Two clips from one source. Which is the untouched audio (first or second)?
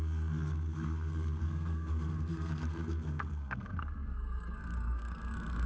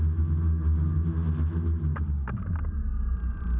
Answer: second